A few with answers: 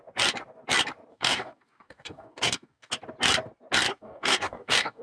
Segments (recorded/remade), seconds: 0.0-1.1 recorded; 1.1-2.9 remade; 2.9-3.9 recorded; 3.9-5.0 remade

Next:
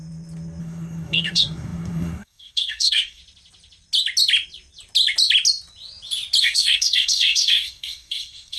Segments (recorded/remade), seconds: 0.0-0.6 recorded; 0.6-3.2 remade; 3.2-6.4 recorded; 6.4-8.6 remade

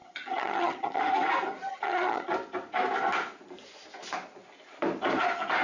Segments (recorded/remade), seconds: 0.0-1.0 remade; 1.0-1.7 recorded; 1.7-2.3 remade; 2.3-5.6 recorded

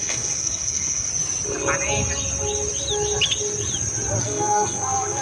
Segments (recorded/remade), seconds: 0.0-1.1 remade; 1.1-4.2 recorded; 4.2-5.2 remade

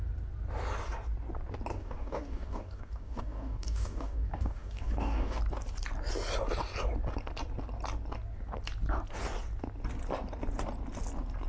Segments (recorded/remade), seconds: 0.0-1.7 recorded; 1.7-5.4 remade; 5.4-11.5 recorded

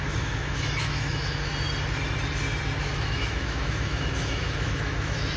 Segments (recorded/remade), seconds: 0.0-1.5 remade; 1.5-2.9 recorded; 2.9-5.4 remade